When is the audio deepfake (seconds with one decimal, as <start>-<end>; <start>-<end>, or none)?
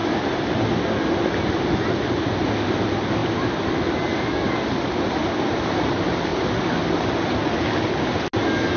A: none